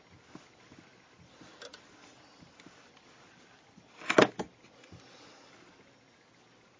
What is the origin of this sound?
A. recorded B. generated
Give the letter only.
A